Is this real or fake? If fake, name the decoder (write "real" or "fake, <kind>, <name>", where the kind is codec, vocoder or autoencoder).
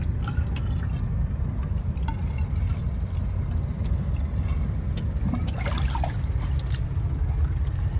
real